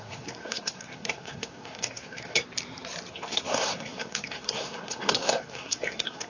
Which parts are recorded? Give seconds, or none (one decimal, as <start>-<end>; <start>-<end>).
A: 2.4-3.1